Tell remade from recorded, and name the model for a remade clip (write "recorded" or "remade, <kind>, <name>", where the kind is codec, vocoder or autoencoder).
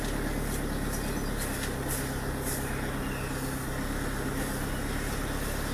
recorded